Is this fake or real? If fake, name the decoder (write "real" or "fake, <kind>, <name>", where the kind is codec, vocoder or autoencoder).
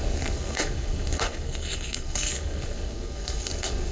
fake, codec, SNAC